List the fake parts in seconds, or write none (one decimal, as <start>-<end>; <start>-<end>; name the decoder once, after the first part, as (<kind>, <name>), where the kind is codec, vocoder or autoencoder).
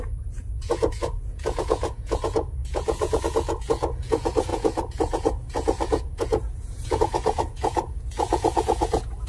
0.0-9.3 (vocoder, Vocos)